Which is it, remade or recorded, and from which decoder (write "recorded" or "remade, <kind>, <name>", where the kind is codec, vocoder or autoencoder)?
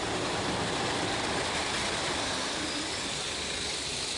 recorded